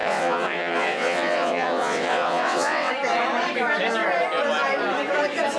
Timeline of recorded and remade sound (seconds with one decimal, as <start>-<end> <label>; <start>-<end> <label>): 0.0-2.9 remade; 2.9-5.6 recorded